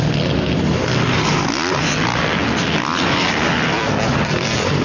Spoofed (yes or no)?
no